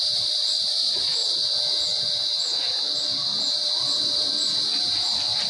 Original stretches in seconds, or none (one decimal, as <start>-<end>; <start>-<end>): 1.2-3.8